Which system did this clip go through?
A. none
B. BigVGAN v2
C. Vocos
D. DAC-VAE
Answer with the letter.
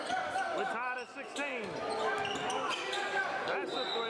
A